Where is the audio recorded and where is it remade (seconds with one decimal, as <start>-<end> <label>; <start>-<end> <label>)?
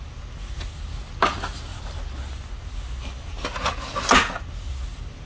0.0-5.3 recorded